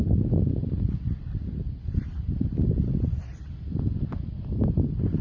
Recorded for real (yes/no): yes